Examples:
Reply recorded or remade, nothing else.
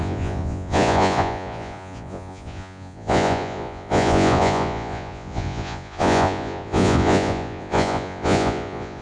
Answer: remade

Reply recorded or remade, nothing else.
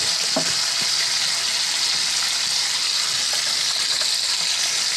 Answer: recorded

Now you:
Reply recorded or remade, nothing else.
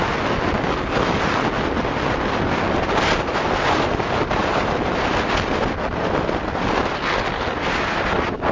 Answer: recorded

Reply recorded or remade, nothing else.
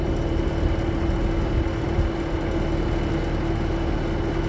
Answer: recorded